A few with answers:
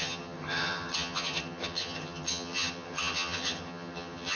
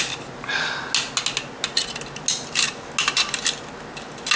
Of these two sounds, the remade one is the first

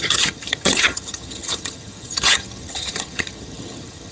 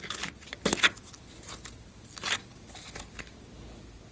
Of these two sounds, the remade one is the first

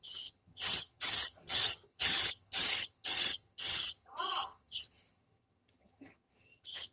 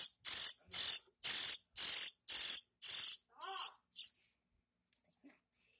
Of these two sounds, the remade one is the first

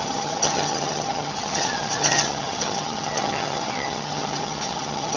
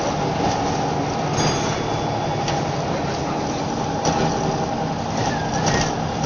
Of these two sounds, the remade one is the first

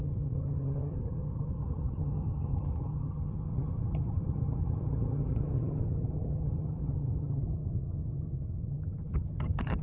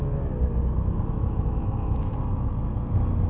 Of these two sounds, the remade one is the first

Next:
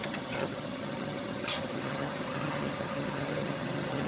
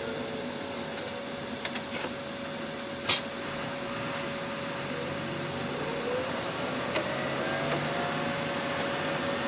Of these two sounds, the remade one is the first